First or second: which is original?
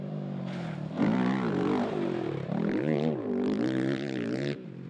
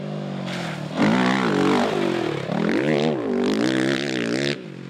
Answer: second